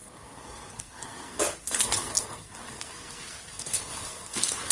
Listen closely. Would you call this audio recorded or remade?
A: remade